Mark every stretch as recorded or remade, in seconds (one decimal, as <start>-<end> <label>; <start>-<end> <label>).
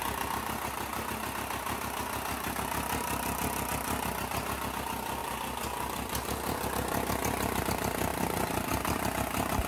0.0-5.2 recorded; 5.2-7.6 remade; 7.6-9.7 recorded